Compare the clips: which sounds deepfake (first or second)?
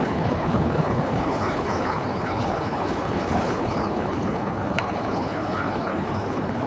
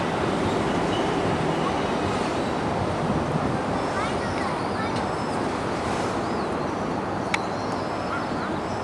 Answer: first